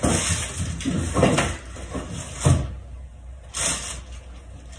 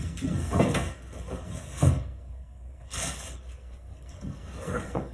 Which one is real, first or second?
first